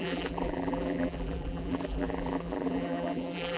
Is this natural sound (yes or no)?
no